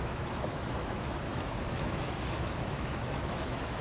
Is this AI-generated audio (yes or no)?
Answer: yes